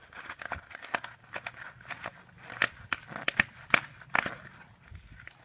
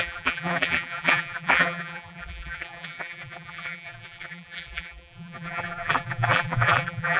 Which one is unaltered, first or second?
first